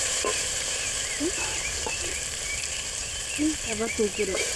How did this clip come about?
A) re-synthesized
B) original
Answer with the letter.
A